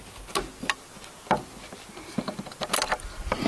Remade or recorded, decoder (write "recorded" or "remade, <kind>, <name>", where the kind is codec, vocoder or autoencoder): recorded